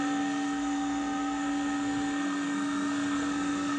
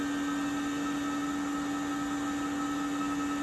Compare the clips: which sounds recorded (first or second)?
second